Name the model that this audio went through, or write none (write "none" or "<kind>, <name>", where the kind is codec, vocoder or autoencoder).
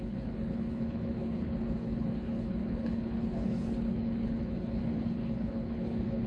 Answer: codec, HILCodec